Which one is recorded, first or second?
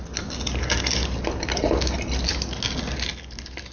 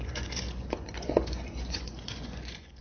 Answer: first